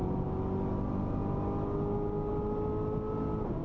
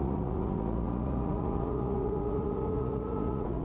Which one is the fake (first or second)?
second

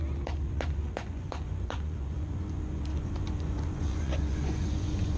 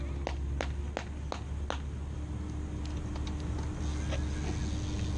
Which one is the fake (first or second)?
first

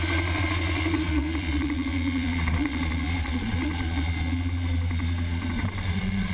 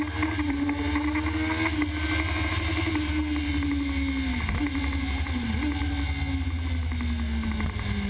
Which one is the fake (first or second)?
first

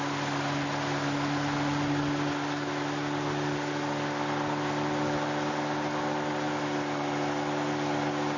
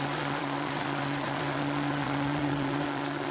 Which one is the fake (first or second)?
second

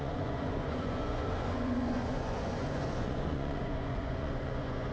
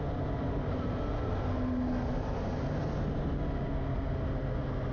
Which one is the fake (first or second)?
first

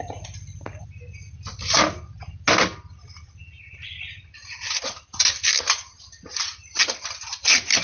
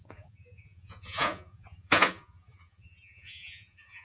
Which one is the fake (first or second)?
second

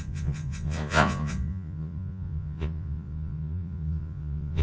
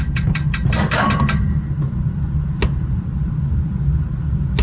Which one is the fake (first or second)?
first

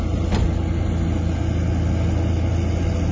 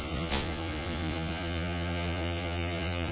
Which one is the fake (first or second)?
second